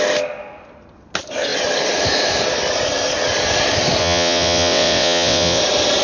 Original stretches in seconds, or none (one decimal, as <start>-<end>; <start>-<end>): 0.0-4.0; 5.6-6.0